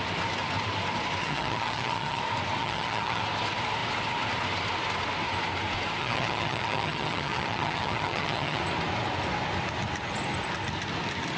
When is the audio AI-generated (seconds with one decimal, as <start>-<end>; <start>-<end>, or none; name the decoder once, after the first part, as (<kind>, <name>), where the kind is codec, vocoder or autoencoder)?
1.2-2.2 (vocoder, HiFi-GAN); 2.6-3.2; 6.0-8.6

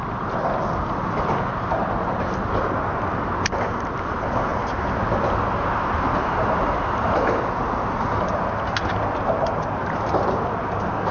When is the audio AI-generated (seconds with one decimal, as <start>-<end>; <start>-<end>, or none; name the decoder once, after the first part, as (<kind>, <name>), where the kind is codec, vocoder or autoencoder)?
none

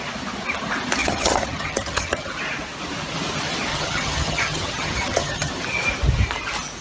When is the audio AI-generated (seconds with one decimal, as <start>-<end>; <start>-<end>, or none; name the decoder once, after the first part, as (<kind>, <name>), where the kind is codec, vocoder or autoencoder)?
1.0-2.3 (vocoder, HiFi-GAN); 3.7-5.5

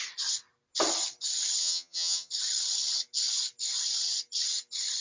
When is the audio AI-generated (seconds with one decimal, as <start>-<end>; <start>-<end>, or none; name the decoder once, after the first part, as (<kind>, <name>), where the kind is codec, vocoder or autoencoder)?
1.6-2.3 (vocoder, HiFi-GAN)

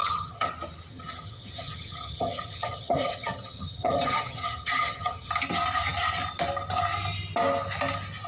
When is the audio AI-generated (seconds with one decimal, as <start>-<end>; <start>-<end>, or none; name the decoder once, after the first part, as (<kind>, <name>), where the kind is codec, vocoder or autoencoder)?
0.0-0.5 (vocoder, HiFi-GAN); 0.9-5.3